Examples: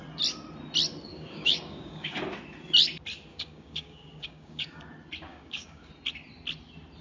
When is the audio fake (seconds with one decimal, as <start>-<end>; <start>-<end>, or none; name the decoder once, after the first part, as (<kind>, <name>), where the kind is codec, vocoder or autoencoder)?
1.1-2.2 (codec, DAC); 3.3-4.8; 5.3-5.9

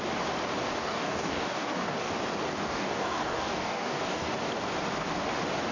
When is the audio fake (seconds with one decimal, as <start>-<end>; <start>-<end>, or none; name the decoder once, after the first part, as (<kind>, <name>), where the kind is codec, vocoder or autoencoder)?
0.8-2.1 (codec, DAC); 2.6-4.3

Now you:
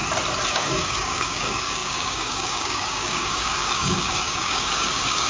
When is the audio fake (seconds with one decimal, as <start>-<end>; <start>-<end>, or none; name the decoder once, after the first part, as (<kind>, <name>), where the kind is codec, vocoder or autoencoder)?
0.5-5.3 (codec, DAC)